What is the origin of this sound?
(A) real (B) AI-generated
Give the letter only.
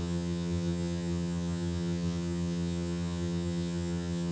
B